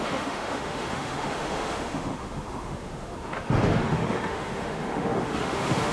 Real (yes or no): no